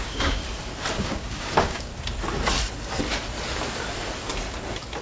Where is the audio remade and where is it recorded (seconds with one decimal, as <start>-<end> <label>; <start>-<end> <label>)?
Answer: 0.0-0.4 remade; 0.4-1.0 recorded; 1.0-1.9 remade; 1.9-5.0 recorded